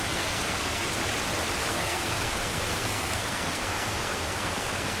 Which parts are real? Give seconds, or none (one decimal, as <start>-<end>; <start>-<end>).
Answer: 1.0-1.6